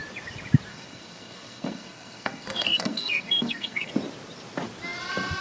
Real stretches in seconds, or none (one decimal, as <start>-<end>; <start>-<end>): 0.0-0.7; 3.9-5.4